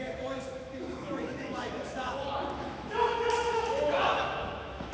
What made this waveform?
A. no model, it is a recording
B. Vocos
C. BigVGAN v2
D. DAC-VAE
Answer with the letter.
D